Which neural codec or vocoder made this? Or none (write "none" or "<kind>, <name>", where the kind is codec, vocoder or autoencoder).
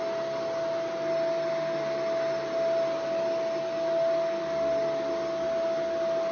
none